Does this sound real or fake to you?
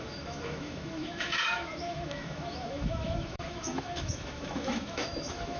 fake